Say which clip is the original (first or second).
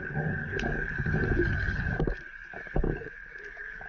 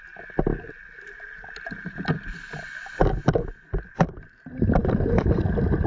second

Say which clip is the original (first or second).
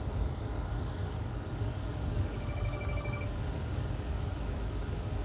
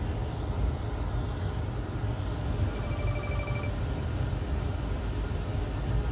second